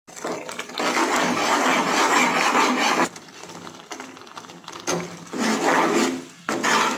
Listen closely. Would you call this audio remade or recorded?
recorded